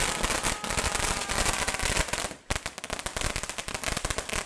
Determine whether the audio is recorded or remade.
recorded